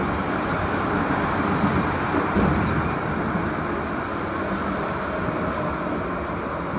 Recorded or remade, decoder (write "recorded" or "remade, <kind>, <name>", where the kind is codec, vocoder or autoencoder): recorded